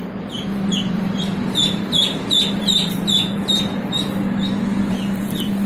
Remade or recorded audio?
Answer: remade